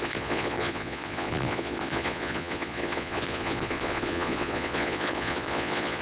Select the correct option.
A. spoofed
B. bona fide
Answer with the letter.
A